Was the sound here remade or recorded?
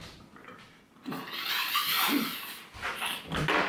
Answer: recorded